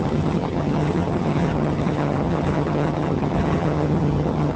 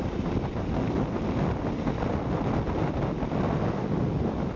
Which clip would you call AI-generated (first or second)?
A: first